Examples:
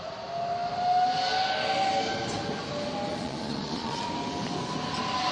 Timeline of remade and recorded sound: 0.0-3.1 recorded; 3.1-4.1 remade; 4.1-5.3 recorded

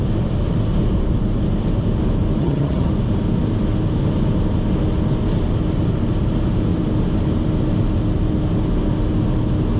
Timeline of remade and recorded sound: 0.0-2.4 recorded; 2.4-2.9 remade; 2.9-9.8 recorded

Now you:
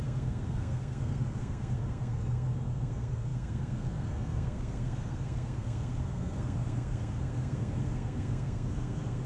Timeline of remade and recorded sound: 0.0-9.3 remade

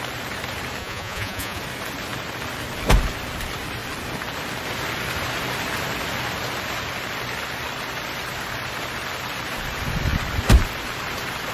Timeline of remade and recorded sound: 0.0-0.8 recorded; 0.8-1.6 remade; 1.6-11.5 recorded

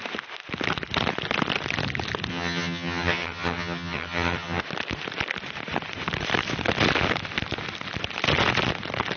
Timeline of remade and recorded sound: 0.0-2.3 recorded; 2.3-4.6 remade; 4.6-9.2 recorded

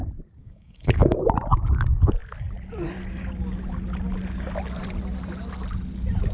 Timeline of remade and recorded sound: 0.0-0.4 recorded; 0.4-1.2 remade; 1.2-6.3 recorded

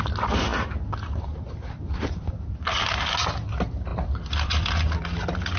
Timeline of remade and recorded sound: 0.0-3.9 recorded; 3.9-4.7 remade; 4.7-5.6 recorded

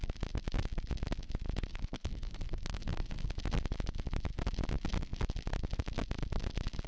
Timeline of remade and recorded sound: 0.0-1.7 recorded; 1.7-3.3 remade; 3.3-6.9 recorded